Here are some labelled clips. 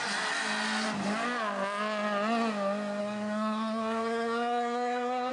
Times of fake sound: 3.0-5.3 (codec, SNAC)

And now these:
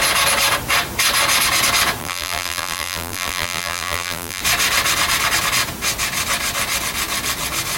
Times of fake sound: 2.0-4.4 (vocoder, BigVGAN v2)

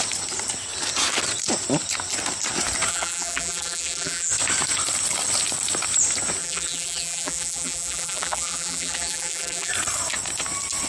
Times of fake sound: 2.9-4.3 (vocoder, BigVGAN v2); 6.4-9.7